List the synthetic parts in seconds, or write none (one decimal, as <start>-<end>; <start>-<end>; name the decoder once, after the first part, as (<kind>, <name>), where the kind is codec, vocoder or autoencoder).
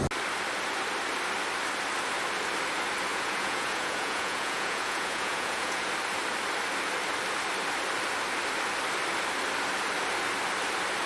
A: 3.1-5.9 (vocoder, Vocos)